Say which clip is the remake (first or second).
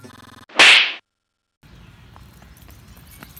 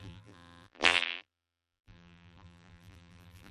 second